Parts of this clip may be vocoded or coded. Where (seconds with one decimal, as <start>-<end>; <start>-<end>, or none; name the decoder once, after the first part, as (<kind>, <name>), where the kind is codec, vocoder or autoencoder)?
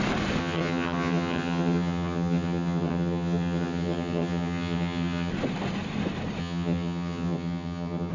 0.4-5.3 (vocoder, HiFi-GAN); 6.4-8.1